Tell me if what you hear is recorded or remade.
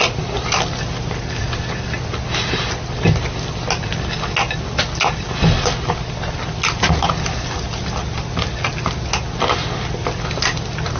recorded